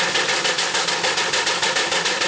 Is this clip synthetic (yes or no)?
no